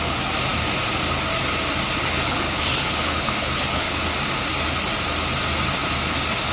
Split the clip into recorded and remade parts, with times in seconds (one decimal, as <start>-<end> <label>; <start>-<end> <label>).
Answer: 0.0-2.0 recorded; 2.0-4.0 remade; 4.0-6.5 recorded